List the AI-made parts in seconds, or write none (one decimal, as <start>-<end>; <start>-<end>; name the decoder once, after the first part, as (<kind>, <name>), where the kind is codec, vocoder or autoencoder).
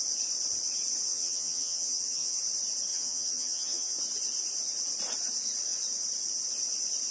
1.1-2.4 (vocoder, HiFi-GAN); 2.9-3.9